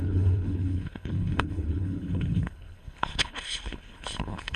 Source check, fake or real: fake